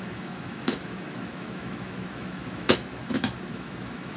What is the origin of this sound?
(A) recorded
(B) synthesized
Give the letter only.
B